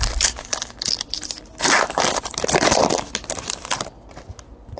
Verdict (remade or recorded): recorded